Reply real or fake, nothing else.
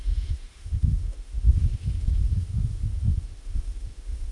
fake